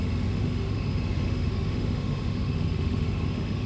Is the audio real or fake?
fake